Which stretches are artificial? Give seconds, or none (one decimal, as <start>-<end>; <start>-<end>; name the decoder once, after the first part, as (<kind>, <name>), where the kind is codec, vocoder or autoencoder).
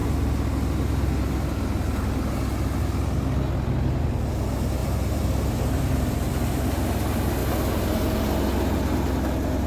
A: 4.8-6.3 (vocoder, BigVGAN v2)